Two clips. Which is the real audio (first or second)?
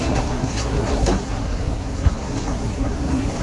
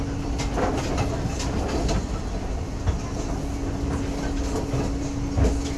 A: second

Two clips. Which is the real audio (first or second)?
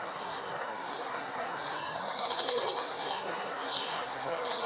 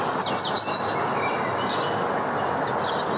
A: second